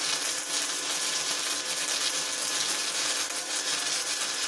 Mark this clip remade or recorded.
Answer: recorded